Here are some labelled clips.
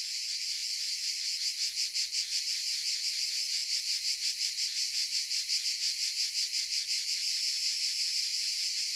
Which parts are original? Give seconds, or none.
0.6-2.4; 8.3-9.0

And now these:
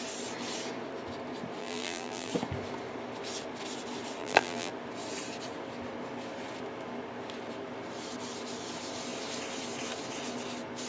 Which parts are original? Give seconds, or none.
0.0-1.6; 2.3-4.2; 4.7-10.9

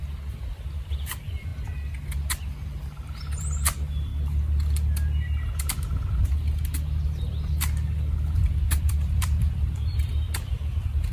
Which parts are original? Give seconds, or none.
0.0-0.5; 1.5-2.8; 4.1-8.8

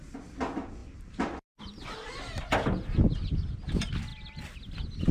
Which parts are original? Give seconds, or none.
0.0-0.8; 1.6-5.1

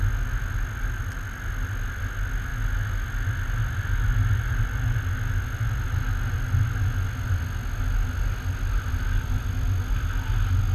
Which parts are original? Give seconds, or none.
0.0-10.7